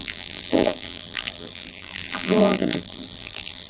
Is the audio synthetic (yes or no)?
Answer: yes